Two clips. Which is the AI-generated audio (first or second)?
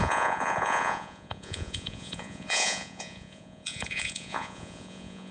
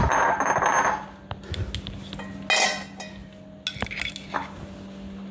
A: first